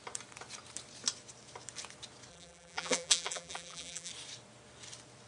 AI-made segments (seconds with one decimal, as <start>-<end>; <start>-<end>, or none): 2.3-4.1